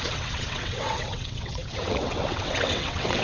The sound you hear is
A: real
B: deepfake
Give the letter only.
B